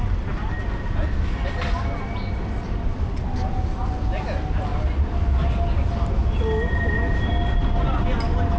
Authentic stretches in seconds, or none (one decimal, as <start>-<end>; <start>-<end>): 0.0-8.6